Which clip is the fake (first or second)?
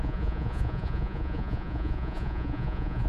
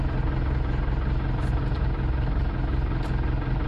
first